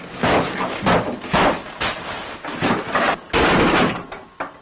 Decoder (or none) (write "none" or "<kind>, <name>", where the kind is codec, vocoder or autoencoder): none